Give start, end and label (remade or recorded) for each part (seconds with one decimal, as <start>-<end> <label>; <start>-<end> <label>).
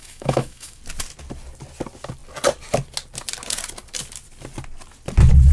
0.0-0.8 remade; 0.8-5.5 recorded